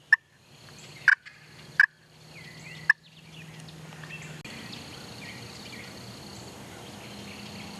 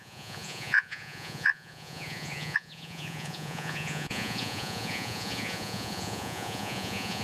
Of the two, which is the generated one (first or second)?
second